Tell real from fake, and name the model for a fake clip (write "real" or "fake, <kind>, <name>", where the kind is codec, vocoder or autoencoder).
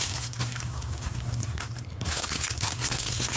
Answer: fake, codec, SNAC